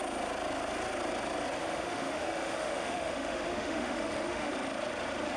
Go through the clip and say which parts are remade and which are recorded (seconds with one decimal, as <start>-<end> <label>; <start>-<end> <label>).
0.0-1.6 recorded; 1.6-4.5 remade; 4.5-5.4 recorded